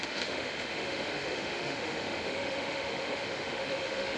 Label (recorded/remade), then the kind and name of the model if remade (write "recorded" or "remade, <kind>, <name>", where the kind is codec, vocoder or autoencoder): remade, autoencoder, DAC-VAE